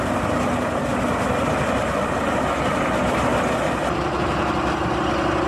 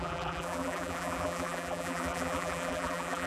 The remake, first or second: second